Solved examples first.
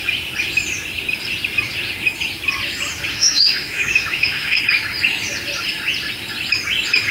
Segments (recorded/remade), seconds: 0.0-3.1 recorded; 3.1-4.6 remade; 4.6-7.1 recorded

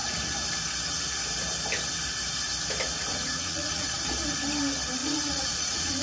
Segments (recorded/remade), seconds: 0.0-3.1 recorded; 3.1-3.9 remade; 3.9-5.0 recorded; 5.0-6.0 remade

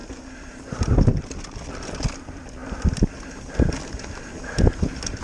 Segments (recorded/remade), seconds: 0.0-1.1 recorded; 1.1-1.7 remade; 1.7-5.2 recorded

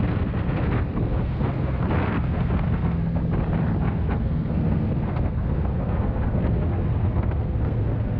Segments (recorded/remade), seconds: 0.0-3.2 remade; 3.2-3.8 recorded; 3.8-8.2 remade

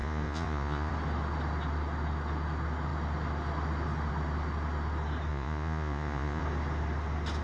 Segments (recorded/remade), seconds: 0.0-0.9 remade; 0.9-5.3 recorded; 5.3-6.4 remade; 6.4-7.4 recorded